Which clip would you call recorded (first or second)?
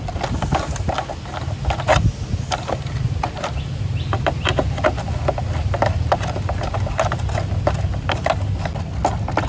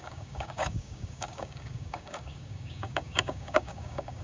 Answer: first